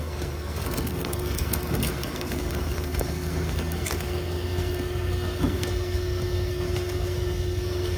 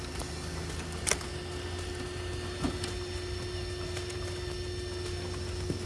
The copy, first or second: first